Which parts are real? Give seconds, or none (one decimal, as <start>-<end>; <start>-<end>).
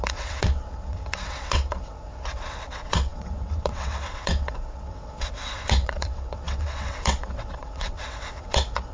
none